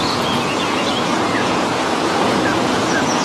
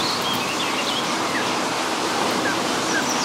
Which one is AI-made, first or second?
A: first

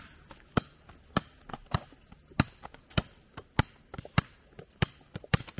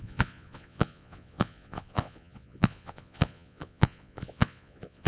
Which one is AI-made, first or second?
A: second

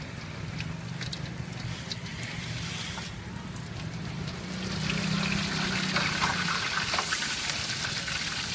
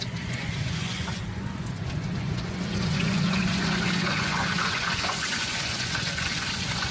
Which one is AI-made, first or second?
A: second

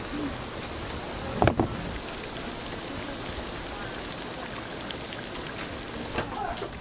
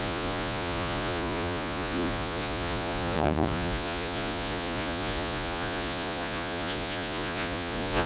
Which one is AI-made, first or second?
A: second